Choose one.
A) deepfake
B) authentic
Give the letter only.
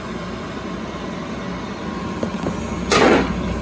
B